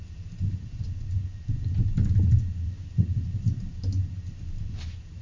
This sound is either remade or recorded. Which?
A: recorded